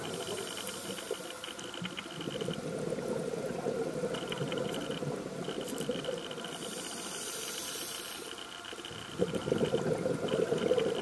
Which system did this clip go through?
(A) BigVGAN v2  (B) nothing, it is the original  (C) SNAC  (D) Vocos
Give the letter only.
B